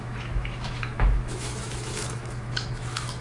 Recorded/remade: remade